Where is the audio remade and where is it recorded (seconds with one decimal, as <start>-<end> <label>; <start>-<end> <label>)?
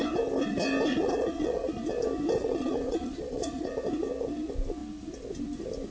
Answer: 0.0-0.9 recorded; 0.9-1.8 remade; 1.8-2.4 recorded; 2.4-3.7 remade; 3.7-5.9 recorded